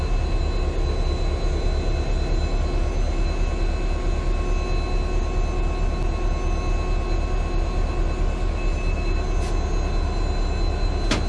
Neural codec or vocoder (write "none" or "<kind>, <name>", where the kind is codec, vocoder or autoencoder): none